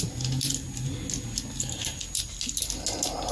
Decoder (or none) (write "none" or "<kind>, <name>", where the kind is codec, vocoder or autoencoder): none